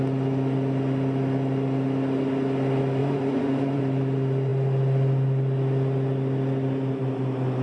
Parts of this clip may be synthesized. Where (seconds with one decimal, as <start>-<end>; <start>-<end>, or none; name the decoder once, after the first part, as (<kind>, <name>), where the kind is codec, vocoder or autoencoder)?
3.0-3.8 (vocoder, Vocos)